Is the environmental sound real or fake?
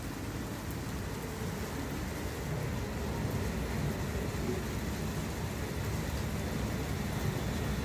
real